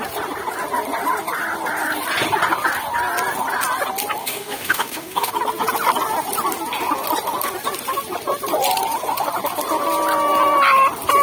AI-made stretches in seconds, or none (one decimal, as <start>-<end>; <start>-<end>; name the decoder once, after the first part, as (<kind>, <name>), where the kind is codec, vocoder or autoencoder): 4.2-5.3 (codec, DAC)